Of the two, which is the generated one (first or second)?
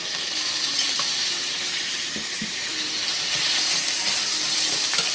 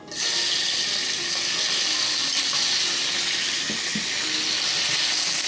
first